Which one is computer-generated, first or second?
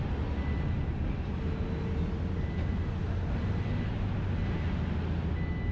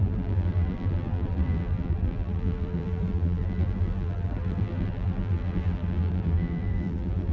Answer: second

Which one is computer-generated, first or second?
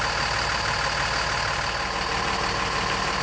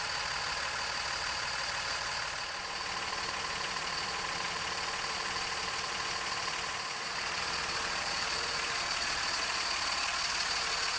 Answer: second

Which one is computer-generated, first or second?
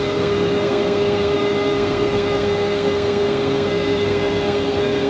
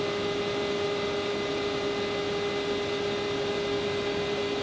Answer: first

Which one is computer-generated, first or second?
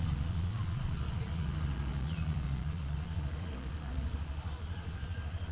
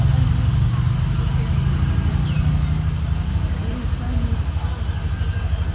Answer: first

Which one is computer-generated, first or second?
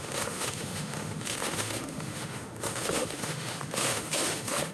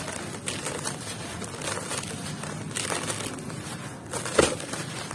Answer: first